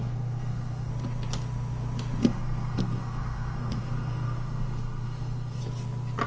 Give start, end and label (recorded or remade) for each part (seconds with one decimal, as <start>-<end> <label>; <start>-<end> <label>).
0.0-0.9 remade; 0.9-2.2 recorded; 2.2-5.6 remade; 5.6-6.3 recorded